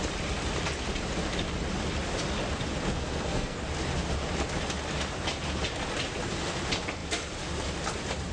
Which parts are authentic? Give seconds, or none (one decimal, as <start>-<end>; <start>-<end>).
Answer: 0.0-2.9; 3.6-8.3